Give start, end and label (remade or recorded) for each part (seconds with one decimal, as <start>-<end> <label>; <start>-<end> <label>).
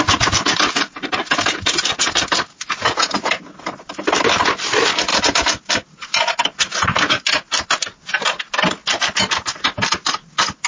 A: 0.0-2.5 recorded; 2.5-3.3 remade; 3.3-10.7 recorded